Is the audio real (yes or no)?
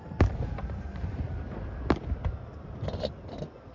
no